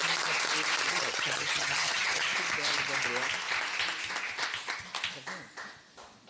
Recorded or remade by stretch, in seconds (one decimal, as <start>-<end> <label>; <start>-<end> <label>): 0.0-0.9 recorded; 0.9-2.3 remade; 2.3-6.3 recorded